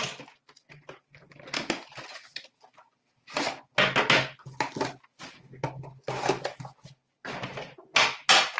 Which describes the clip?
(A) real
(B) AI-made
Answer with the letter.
A